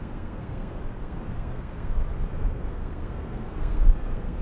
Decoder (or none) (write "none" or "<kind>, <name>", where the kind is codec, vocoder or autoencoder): codec, SNAC